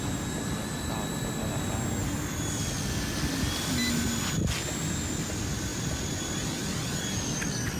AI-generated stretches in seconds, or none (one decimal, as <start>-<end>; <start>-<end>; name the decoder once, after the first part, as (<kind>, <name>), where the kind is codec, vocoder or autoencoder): none